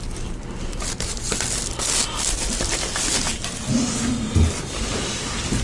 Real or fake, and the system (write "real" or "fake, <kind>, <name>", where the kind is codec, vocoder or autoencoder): real